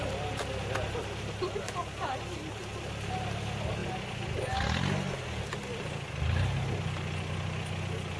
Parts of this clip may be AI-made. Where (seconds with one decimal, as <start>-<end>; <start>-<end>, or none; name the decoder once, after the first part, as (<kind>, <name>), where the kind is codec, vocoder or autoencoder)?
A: none